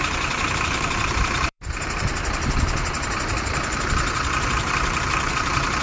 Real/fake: fake